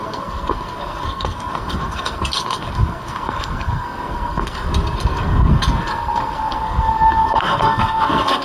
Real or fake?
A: fake